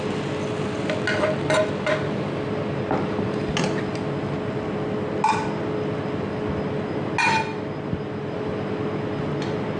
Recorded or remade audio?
recorded